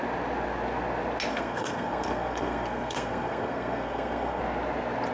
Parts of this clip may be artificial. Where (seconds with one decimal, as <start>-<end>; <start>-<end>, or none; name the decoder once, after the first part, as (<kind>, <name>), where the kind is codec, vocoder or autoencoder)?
1.3-4.4 (codec, SNAC)

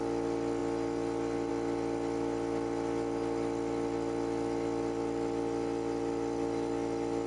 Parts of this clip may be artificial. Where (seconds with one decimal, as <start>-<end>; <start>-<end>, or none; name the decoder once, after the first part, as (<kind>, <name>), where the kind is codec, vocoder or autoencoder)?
none

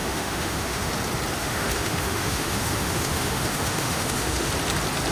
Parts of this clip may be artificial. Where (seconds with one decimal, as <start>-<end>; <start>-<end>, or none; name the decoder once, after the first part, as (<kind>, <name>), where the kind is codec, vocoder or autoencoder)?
0.0-0.9 (autoencoder, DAC-VAE); 1.4-4.5

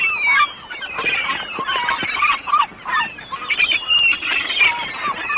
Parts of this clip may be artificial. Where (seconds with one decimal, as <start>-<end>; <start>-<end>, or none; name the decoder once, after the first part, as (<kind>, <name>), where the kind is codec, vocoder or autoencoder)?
none

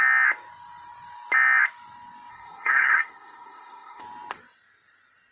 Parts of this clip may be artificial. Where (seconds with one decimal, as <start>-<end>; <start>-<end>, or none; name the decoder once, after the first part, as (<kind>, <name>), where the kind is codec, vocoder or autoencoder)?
2.3-4.0 (codec, SNAC)